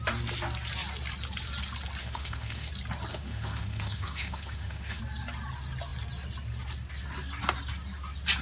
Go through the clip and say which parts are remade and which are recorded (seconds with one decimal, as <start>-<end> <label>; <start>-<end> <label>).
0.0-2.0 recorded; 2.0-2.7 remade; 2.7-3.1 recorded; 3.1-5.0 remade; 5.0-8.4 recorded